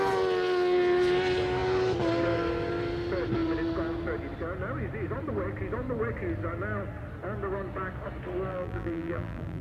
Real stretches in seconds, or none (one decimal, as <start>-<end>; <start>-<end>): 0.0-8.5